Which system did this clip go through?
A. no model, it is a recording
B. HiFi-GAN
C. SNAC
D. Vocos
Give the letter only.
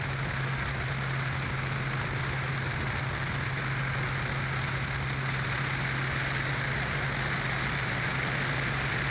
A